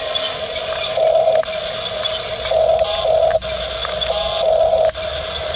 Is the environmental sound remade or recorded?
recorded